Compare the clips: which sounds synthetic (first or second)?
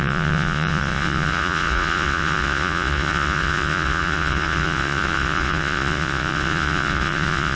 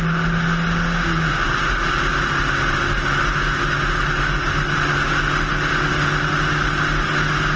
first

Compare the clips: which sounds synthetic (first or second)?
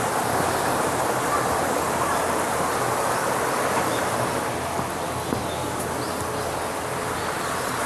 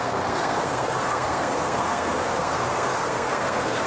second